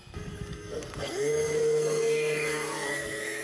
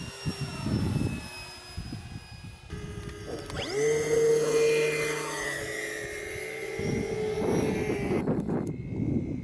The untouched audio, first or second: second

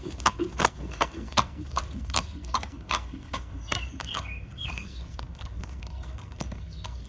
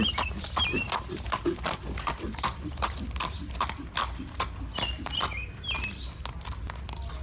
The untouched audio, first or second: second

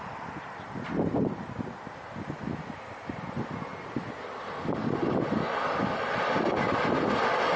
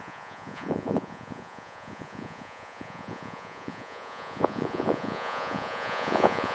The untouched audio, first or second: first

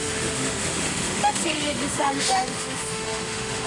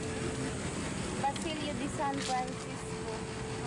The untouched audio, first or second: second